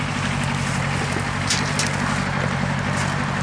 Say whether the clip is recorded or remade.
recorded